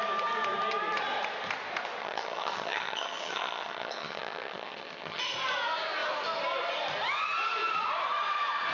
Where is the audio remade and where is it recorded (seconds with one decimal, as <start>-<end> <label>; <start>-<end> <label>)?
0.0-2.0 recorded; 2.0-5.2 remade; 5.2-8.7 recorded